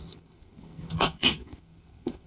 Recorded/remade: remade